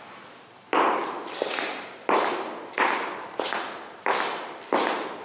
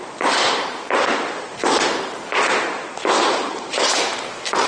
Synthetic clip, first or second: second